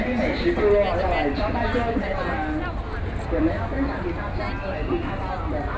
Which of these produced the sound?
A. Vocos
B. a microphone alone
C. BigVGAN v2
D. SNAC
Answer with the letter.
B